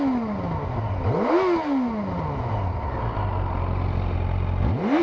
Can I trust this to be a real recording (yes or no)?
yes